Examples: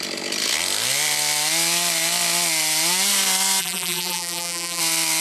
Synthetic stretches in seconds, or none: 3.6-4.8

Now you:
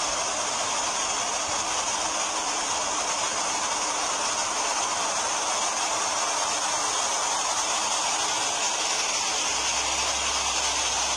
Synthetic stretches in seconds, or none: none

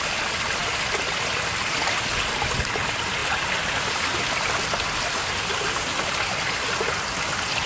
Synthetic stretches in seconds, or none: none

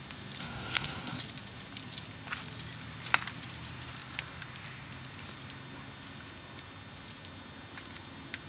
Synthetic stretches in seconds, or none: 0.4-1.2

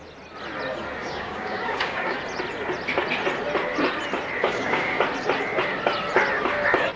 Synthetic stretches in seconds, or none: 1.0-2.2; 4.4-5.0

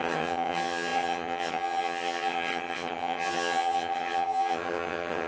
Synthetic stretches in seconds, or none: 0.0-5.3

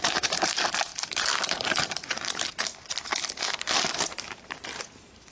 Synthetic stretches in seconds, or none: 0.0-0.9; 4.1-5.3

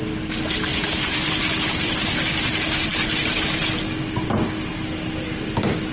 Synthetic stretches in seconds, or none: 0.7-2.5